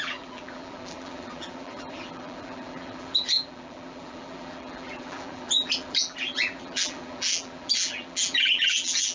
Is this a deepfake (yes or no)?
yes